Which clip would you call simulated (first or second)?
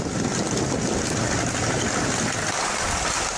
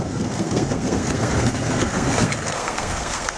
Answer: second